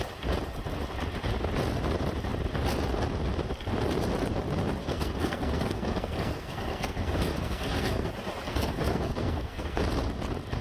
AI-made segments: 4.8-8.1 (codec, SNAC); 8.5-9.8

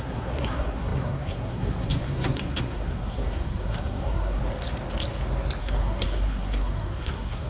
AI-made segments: 0.0-4.4 (codec, SNAC); 5.6-7.5

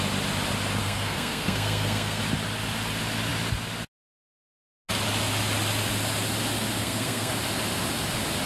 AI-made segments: 0.8-2.2 (codec, SNAC); 6.8-7.3

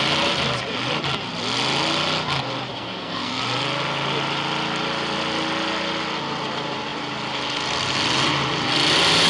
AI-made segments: 2.7-3.4 (codec, SNAC)

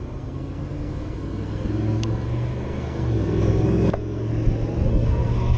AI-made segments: 0.0-4.3 (codec, SNAC); 4.9-5.6

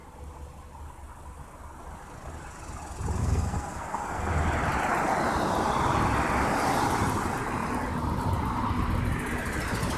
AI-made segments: 3.2-4.3 (codec, SNAC)